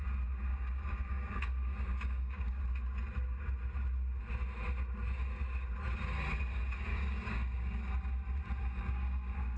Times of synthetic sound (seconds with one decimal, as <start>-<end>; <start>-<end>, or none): 0.5-2.6; 6.9-8.1; 8.6-9.6